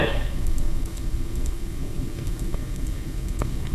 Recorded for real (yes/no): no